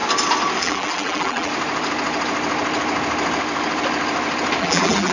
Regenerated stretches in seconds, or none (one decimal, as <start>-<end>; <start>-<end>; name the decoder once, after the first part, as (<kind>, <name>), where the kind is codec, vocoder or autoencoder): 0.6-1.5 (vocoder, BigVGAN v2); 4.6-5.1